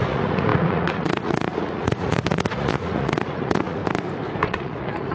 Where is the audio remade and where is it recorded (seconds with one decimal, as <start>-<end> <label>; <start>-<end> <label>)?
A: 0.0-3.8 remade; 3.8-4.4 recorded; 4.4-5.1 remade